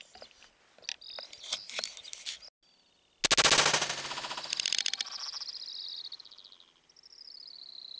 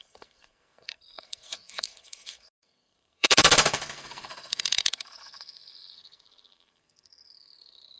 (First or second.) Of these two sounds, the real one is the first